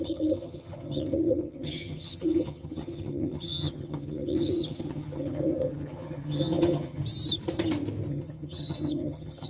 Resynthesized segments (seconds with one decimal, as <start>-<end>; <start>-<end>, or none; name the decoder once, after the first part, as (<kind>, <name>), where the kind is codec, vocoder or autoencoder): 0.0-7.0 (vocoder, HiFi-GAN); 8.1-9.5